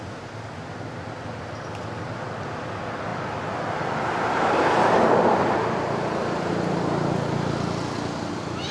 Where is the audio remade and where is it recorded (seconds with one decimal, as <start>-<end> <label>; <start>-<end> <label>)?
0.0-8.7 recorded